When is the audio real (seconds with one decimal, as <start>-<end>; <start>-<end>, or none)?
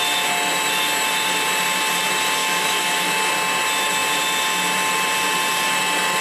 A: 0.0-2.4; 3.3-6.2